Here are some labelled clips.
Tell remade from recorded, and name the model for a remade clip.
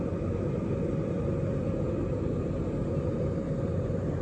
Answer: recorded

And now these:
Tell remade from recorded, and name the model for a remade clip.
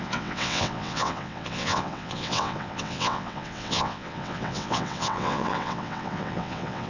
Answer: remade, vocoder, WaveNeXt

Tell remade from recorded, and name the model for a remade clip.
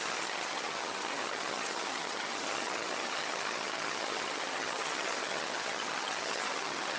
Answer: remade, vocoder, HiFi-GAN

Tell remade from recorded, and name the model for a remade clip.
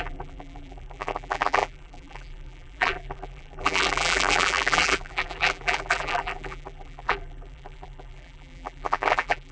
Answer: remade, vocoder, BigVGAN v2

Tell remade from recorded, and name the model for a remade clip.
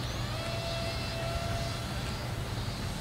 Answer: recorded